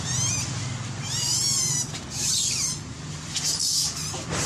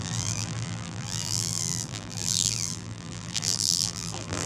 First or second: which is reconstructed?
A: second